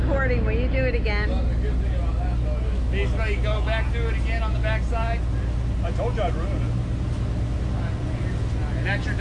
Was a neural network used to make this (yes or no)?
no